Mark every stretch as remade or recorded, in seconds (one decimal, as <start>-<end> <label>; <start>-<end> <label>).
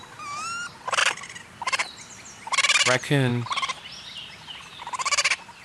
0.0-5.6 recorded